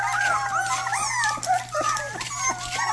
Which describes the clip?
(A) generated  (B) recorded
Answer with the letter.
B